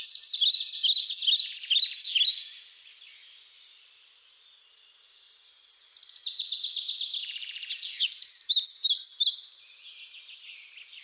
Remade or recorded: recorded